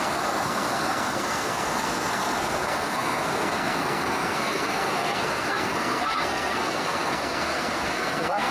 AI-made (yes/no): yes